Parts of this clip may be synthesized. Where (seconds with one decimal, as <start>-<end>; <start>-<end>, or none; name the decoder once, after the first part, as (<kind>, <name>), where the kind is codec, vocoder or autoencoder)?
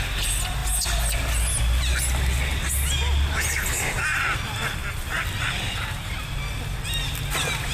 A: none